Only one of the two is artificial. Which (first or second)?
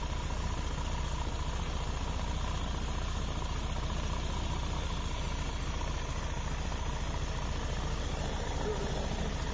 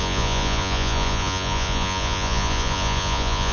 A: second